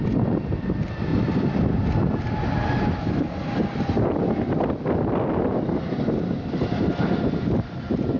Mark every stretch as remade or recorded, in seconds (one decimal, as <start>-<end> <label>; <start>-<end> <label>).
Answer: 0.0-8.2 recorded